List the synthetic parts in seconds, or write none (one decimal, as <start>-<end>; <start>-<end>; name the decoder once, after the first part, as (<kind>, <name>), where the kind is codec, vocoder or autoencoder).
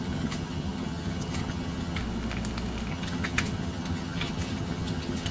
0.0-2.0 (vocoder, HiFi-GAN); 2.9-5.3